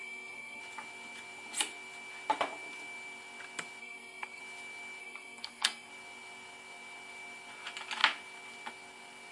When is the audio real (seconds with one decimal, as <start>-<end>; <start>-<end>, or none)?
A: 0.6-3.8; 4.4-5.0; 5.9-9.3